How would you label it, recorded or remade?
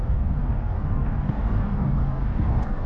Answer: remade